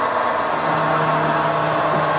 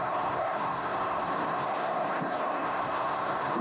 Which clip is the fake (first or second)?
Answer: second